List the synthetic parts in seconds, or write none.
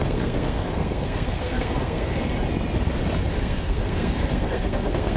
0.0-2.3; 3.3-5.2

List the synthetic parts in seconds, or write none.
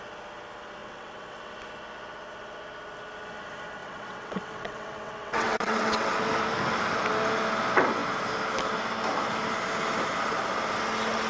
0.8-1.5; 3.8-6.1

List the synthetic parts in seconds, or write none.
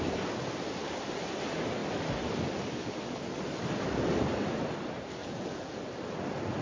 5.2-5.8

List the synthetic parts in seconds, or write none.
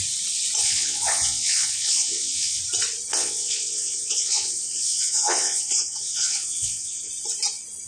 0.6-2.6; 3.1-7.1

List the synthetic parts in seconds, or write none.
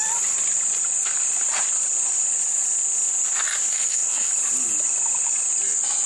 3.7-4.3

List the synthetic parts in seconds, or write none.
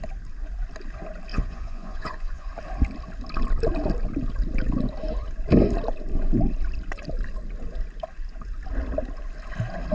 1.3-2.5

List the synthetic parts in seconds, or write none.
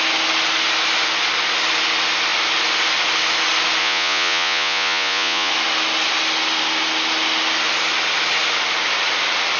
3.8-5.5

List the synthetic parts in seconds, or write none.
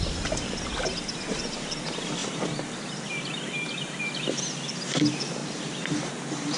none